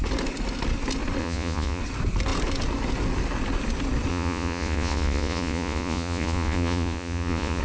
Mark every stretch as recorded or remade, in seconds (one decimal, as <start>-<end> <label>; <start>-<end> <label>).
0.0-1.2 recorded; 1.2-1.8 remade; 1.8-4.1 recorded; 4.1-7.6 remade